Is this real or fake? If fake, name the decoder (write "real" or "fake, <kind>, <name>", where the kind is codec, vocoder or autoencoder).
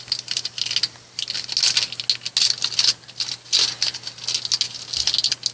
real